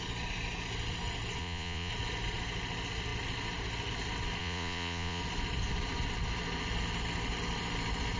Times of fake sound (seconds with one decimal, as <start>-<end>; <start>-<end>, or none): 1.4-1.9; 4.4-5.2

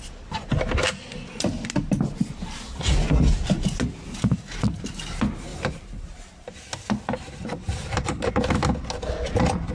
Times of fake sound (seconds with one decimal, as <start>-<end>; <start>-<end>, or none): 5.5-8.3

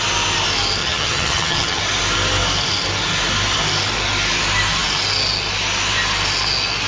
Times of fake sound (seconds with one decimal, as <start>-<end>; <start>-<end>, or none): 0.8-1.8

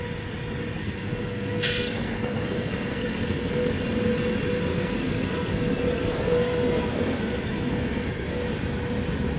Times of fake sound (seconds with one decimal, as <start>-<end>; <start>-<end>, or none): 0.8-3.8; 4.7-8.4

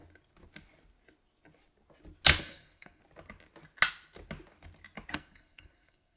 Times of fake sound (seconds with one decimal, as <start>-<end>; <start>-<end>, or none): 2.4-3.0; 5.1-6.2